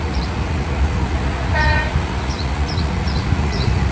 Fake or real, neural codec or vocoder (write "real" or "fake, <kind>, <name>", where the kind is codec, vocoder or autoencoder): fake, vocoder, Vocos